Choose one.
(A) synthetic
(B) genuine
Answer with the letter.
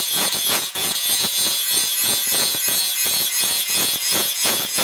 A